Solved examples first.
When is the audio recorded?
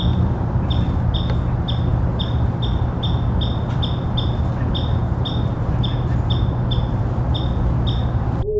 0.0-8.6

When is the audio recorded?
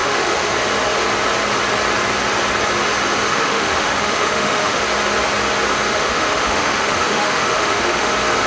0.5-3.3; 4.8-5.9; 8.1-8.5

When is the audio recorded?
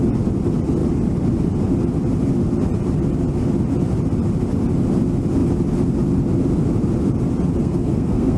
0.0-7.6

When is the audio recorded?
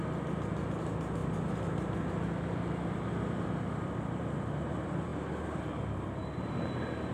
0.0-7.1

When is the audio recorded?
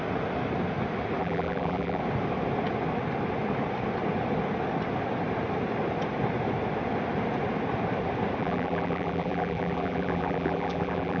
0.0-1.2; 2.0-8.4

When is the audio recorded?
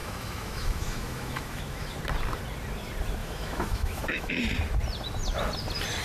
2.0-3.2; 4.4-6.0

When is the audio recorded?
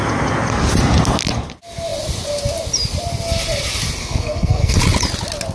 0.0-4.0; 4.8-5.5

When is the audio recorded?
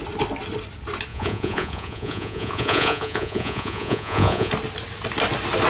0.0-1.1; 4.5-5.7